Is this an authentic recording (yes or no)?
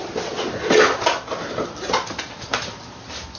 yes